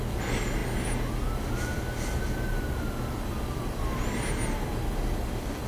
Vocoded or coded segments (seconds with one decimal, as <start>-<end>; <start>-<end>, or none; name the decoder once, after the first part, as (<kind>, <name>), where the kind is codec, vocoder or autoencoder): none